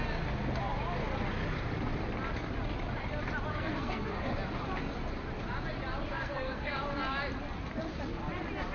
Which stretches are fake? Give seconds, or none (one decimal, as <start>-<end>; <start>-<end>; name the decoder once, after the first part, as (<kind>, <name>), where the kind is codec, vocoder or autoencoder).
3.5-4.3 (codec, SNAC); 6.1-6.7